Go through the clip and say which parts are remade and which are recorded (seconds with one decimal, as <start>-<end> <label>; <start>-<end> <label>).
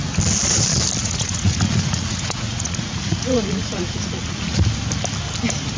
0.0-1.0 recorded; 1.0-4.5 remade; 4.5-5.8 recorded